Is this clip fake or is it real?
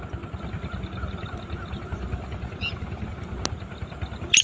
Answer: real